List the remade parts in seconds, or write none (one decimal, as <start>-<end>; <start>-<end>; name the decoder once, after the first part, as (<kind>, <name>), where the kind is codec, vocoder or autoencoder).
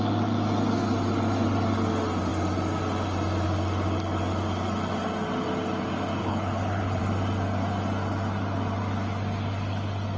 6.2-7.0 (codec, HILCodec)